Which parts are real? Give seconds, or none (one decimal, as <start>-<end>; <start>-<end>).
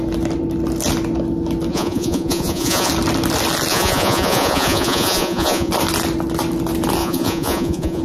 0.0-1.7; 2.9-3.7; 5.7-7.0